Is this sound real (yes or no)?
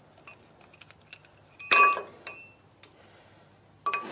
yes